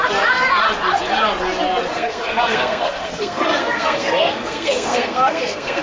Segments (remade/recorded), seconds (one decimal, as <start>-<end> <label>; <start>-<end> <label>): 0.0-1.9 recorded; 1.9-5.8 remade